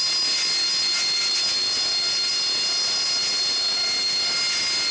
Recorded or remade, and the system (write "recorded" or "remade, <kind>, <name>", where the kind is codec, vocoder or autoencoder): recorded